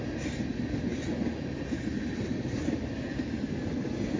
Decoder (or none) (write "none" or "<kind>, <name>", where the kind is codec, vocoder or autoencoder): none